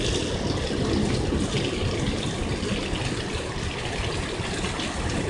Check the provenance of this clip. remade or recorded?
recorded